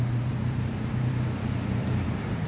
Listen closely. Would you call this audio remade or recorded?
remade